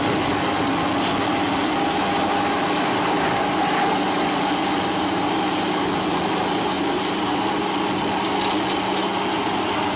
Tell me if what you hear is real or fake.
real